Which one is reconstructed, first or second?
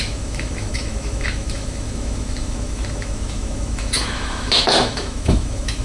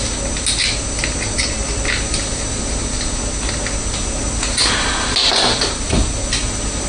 first